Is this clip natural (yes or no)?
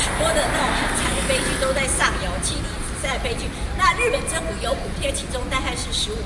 yes